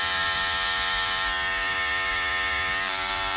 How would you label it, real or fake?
fake